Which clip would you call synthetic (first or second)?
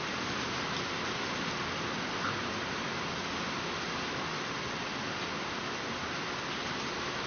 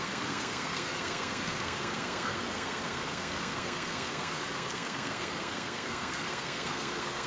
second